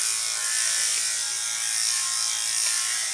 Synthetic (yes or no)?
no